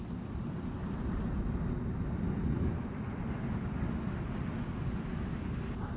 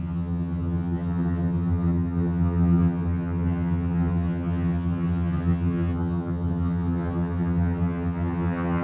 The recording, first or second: first